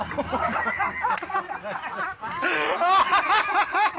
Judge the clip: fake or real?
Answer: real